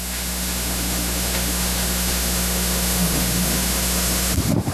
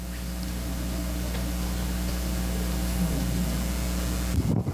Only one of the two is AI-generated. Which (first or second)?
first